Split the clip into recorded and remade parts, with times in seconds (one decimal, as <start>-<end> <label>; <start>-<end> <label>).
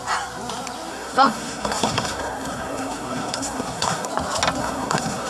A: 0.0-0.9 recorded; 0.9-4.1 remade; 4.1-4.6 recorded; 4.6-5.3 remade